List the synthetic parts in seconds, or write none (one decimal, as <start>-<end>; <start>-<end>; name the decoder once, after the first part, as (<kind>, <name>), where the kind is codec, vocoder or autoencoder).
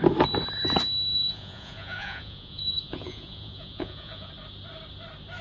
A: 1.1-4.3 (vocoder, Vocos)